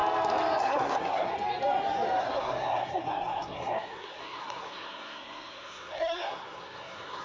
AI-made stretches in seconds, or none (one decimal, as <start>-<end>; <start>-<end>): 0.6-1.3; 2.2-7.2